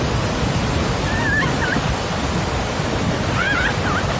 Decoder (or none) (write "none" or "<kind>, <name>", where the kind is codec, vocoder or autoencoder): none